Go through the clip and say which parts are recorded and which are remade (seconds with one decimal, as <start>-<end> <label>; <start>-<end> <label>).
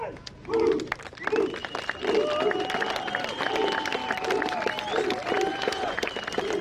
0.0-5.5 recorded; 5.5-6.1 remade; 6.1-6.6 recorded